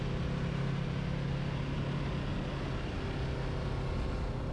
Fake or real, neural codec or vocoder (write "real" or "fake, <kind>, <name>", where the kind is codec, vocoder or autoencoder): real